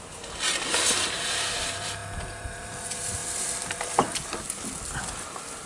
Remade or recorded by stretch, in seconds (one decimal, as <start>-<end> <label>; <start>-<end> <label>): 0.0-5.7 recorded